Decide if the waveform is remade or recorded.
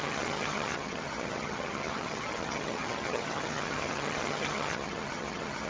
remade